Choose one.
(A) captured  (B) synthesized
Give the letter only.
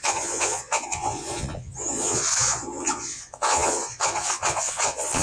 B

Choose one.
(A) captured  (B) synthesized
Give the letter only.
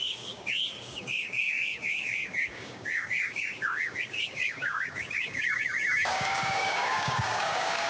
B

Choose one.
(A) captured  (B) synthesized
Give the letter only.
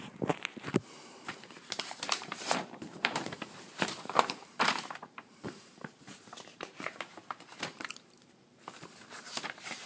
B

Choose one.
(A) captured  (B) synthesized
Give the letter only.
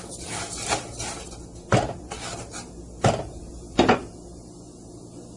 A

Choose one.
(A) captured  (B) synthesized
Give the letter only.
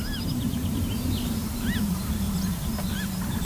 A